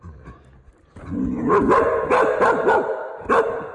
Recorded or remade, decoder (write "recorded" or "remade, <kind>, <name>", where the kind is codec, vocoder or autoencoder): recorded